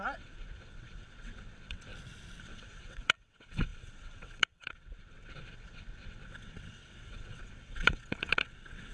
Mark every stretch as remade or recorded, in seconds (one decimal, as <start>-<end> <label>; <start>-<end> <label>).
0.0-1.9 remade; 1.9-2.4 recorded; 2.4-8.9 remade